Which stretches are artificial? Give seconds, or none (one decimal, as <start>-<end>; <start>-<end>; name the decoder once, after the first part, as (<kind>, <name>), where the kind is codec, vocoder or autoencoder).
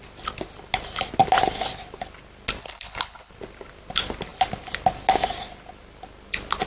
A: 2.6-3.3 (codec, HILCodec)